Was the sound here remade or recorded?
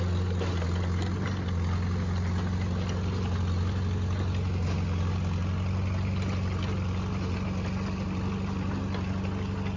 recorded